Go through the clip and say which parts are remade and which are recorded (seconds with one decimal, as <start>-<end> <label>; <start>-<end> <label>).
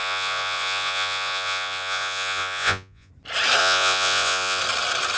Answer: 0.0-3.1 remade; 3.1-3.6 recorded; 3.6-4.6 remade; 4.6-5.2 recorded